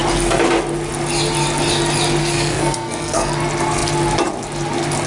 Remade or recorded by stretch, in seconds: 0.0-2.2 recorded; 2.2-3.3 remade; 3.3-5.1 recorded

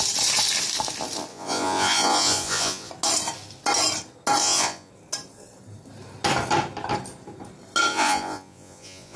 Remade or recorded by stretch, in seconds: 0.0-1.3 recorded; 1.3-2.9 remade; 2.9-4.4 recorded; 4.4-4.9 remade; 4.9-7.9 recorded; 7.9-9.2 remade

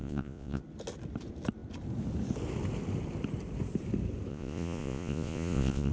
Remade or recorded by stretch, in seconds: 0.0-0.6 remade; 0.6-4.3 recorded; 4.3-5.9 remade

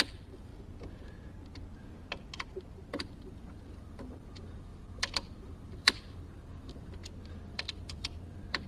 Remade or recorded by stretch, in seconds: 0.0-0.5 remade; 0.5-2.9 recorded; 2.9-7.0 remade; 7.0-7.5 recorded; 7.5-8.7 remade

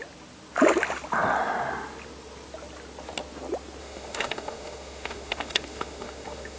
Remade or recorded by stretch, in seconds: 0.0-3.8 recorded; 3.8-6.6 remade